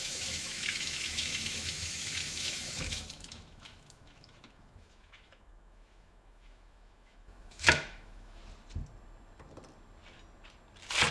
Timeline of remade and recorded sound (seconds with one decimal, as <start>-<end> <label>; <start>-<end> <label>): 0.0-8.4 remade; 8.4-11.1 recorded